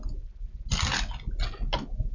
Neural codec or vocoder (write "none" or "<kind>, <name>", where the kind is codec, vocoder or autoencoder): none